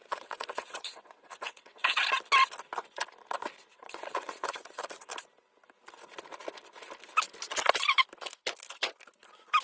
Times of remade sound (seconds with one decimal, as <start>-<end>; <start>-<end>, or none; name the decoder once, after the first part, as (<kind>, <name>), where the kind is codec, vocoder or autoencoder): 0.0-2.0 (vocoder, WaveNeXt); 3.7-5.1